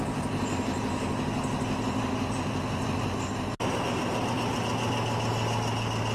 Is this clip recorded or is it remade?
recorded